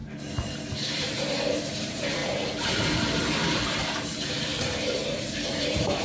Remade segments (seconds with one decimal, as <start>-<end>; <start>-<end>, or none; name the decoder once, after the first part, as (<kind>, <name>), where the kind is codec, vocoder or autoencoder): 1.0-6.0 (vocoder, BigVGAN v2)